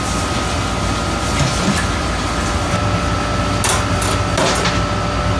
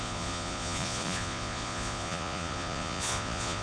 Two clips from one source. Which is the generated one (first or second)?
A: second